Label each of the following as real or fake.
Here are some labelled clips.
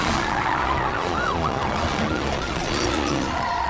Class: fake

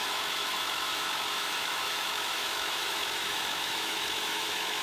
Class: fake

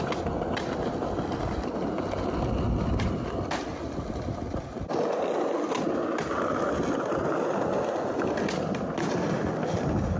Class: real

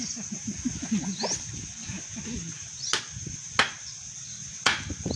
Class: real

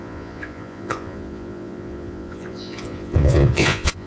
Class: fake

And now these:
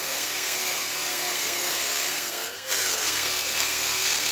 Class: fake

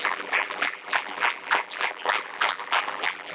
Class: fake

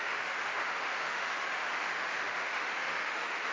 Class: fake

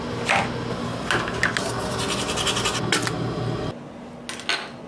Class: real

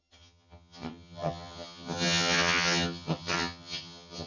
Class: fake